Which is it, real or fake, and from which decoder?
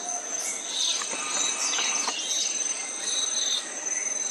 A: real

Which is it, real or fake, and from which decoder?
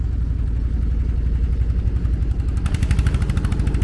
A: real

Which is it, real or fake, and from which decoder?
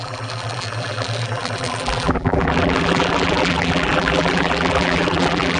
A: fake, vocoder, BigVGAN v2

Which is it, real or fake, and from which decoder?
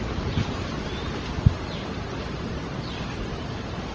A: real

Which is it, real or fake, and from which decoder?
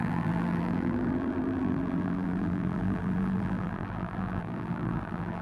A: fake, vocoder, BigVGAN v2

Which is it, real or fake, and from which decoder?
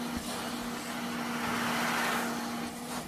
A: real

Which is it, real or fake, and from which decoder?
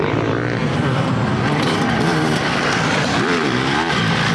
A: fake, vocoder, BigVGAN v2